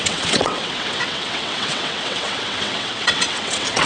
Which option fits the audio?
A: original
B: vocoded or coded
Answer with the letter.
B